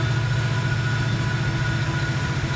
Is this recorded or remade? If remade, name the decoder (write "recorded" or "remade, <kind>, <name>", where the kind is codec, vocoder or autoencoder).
recorded